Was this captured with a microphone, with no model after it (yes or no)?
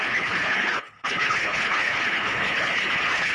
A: no